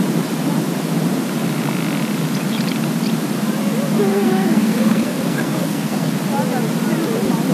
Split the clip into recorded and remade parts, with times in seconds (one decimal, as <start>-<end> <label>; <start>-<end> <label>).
0.0-4.1 recorded; 4.1-6.1 remade; 6.1-7.5 recorded